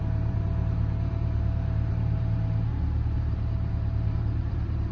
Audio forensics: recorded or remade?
remade